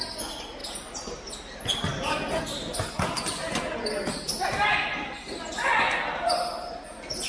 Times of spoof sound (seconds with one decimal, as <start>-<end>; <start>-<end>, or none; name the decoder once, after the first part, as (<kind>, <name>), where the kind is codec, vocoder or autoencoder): 0.6-1.6 (vocoder, BigVGAN v2)